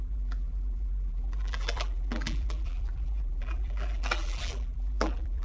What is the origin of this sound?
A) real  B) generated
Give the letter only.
B